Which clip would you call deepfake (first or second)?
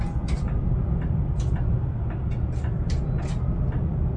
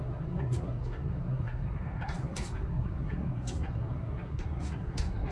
second